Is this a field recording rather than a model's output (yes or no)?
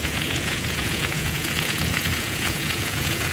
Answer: no